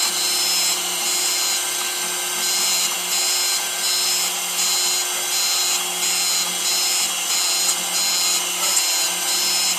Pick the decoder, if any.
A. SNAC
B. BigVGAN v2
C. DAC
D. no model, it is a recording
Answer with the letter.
D